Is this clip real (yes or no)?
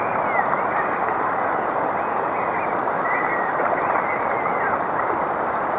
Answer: yes